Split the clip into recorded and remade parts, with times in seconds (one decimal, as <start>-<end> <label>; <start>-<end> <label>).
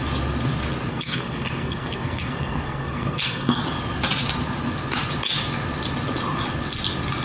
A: 0.0-0.9 recorded; 0.9-3.6 remade; 3.6-7.2 recorded